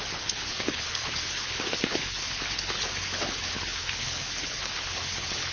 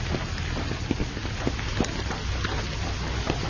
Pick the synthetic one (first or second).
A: first